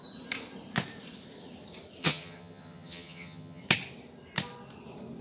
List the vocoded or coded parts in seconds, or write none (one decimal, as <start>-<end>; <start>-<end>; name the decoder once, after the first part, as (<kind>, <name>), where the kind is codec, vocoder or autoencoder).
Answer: 2.0-3.6 (vocoder, HiFi-GAN)